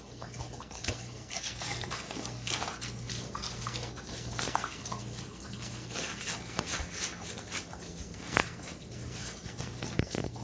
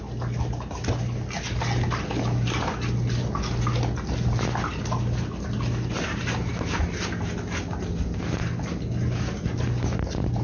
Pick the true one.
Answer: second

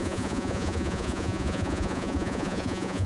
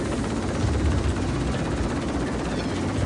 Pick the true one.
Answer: second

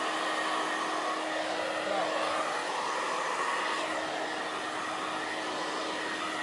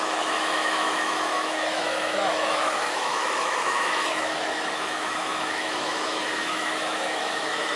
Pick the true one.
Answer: first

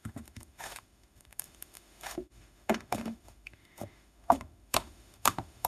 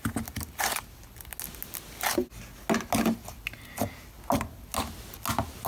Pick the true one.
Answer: second